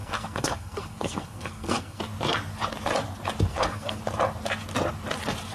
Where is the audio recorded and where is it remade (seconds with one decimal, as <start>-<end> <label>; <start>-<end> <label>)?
0.0-2.0 remade; 2.0-3.5 recorded; 3.5-4.0 remade; 4.0-5.5 recorded